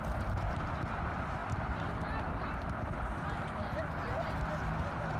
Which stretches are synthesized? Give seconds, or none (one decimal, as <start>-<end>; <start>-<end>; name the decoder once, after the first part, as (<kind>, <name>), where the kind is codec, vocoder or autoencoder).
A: none